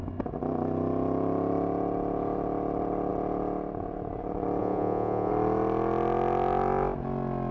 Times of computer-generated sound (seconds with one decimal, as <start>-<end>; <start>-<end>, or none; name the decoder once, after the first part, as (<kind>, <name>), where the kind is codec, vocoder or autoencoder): 4.6-5.3 (vocoder, Vocos)